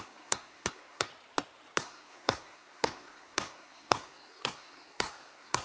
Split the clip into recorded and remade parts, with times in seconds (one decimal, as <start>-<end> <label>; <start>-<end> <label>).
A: 0.0-1.1 remade; 1.1-1.8 recorded; 1.8-5.6 remade

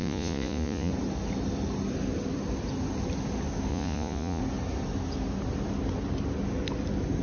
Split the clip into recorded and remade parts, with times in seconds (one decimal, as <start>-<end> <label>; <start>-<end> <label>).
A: 0.0-0.9 remade; 0.9-3.7 recorded; 3.7-4.4 remade; 4.4-7.2 recorded

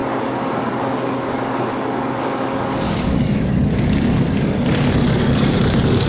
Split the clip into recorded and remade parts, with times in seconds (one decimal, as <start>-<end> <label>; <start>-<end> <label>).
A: 0.0-6.1 remade

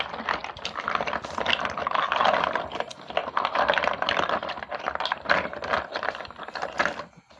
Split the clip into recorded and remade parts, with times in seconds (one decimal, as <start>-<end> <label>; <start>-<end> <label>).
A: 0.0-0.4 recorded; 0.4-1.8 remade; 1.8-3.2 recorded; 3.2-6.4 remade; 6.4-7.4 recorded

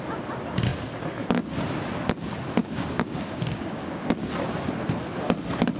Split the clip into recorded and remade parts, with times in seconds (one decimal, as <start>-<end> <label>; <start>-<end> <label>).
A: 0.0-2.6 recorded; 2.6-4.1 remade; 4.1-5.8 recorded